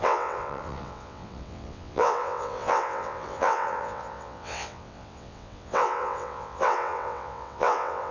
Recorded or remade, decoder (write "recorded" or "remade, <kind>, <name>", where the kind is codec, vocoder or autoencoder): remade, vocoder, WaveNeXt